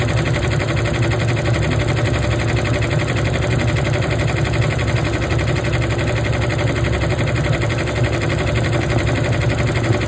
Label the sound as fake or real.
real